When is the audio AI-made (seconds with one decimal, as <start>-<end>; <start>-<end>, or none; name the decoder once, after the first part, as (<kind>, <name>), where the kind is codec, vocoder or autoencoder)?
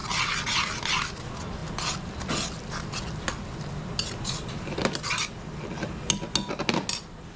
none